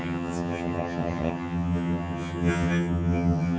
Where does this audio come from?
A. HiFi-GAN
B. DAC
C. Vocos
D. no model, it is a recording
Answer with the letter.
A